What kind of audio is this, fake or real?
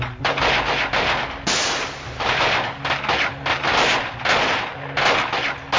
real